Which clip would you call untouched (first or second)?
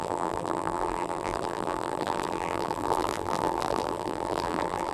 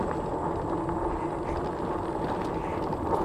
second